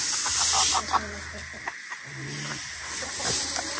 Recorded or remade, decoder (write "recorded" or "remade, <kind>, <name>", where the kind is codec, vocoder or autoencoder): recorded